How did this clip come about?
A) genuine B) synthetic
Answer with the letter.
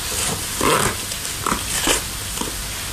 A